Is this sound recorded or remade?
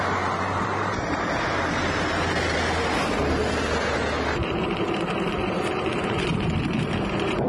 remade